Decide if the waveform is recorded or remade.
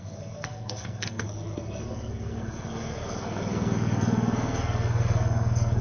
remade